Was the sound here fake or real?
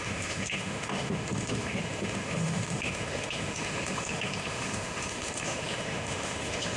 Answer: fake